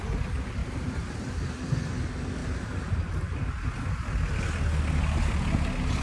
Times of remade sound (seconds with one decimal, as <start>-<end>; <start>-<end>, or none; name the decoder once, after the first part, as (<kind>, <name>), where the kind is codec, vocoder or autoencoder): 0.6-1.5 (vocoder, BigVGAN v2)